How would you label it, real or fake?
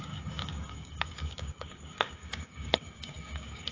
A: fake